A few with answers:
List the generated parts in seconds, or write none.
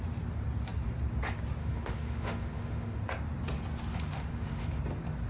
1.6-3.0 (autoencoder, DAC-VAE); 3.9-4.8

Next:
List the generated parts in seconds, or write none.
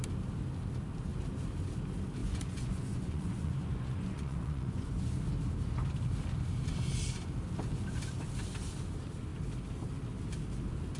2.2-5.1 (vocoder, Vocos)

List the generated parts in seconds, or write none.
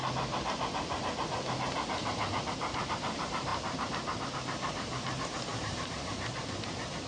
2.5-7.1 (vocoder, BigVGAN v2)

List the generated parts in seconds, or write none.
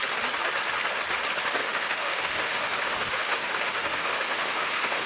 1.6-5.1 (autoencoder, DAC-VAE)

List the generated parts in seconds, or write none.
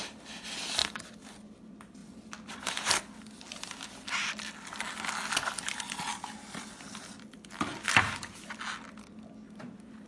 none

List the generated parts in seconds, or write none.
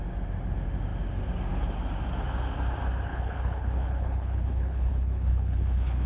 3.1-6.1 (codec, HILCodec)